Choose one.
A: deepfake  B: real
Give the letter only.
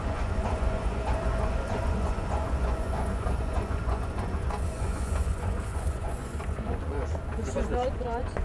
A